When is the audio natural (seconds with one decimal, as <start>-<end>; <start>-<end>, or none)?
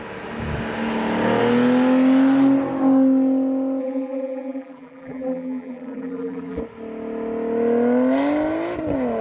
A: 0.0-3.8; 6.6-9.2